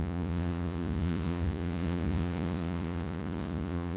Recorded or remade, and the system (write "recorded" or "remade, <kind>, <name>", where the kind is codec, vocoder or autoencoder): remade, vocoder, Vocos